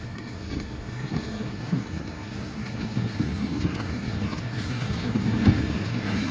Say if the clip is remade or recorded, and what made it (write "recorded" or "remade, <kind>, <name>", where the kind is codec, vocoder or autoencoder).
remade, codec, SNAC